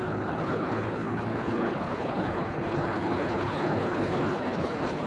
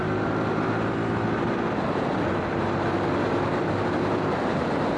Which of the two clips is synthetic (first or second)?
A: first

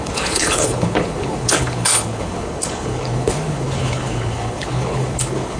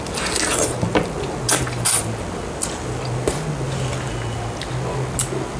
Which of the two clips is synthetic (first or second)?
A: first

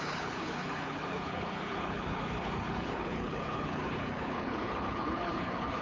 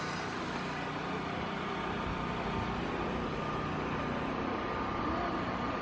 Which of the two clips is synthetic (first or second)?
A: first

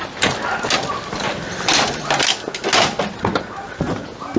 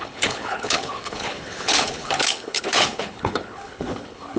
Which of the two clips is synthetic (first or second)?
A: second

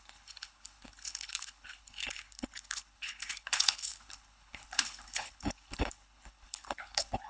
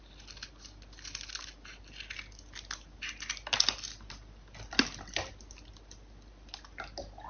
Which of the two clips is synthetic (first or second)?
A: first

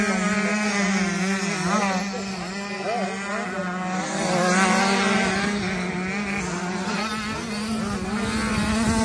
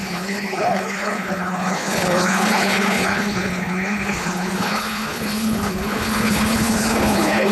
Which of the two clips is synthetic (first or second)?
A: second